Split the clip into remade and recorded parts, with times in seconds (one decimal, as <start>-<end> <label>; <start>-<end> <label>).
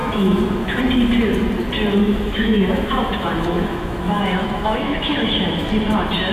0.0-0.8 remade; 0.8-2.0 recorded; 2.0-5.7 remade; 5.7-6.3 recorded